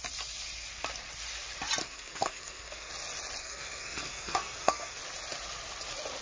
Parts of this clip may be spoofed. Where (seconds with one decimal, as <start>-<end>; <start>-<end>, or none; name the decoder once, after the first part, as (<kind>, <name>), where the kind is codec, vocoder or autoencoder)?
1.8-2.9 (codec, SNAC); 3.4-5.0